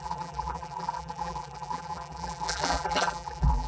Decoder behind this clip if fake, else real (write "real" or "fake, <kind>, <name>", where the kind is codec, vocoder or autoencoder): fake, vocoder, BigVGAN v2